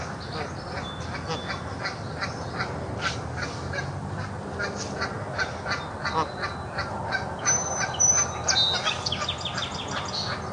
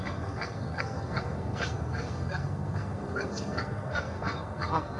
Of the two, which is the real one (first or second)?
first